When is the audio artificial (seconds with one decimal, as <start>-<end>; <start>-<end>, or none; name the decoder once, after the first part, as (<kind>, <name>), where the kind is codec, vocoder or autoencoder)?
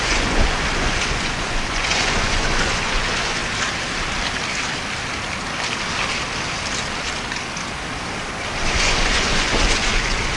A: 0.0-3.4 (vocoder, Vocos); 8.7-10.4